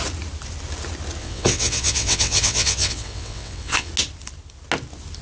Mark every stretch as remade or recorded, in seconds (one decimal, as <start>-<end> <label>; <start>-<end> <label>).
0.0-1.2 recorded; 1.2-3.9 remade; 3.9-5.2 recorded